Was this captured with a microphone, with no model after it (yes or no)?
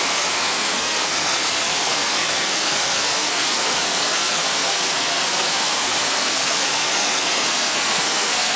no